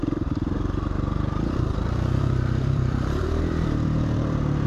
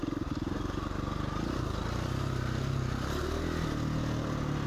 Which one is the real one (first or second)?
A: second